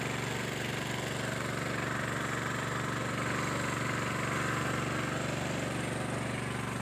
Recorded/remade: recorded